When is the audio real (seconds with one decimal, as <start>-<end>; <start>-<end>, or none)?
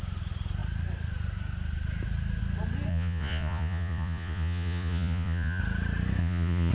0.0-2.9; 5.6-6.2